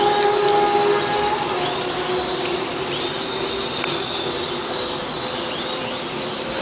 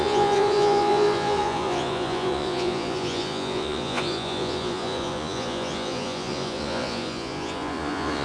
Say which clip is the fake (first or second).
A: second